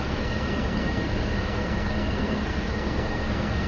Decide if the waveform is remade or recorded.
remade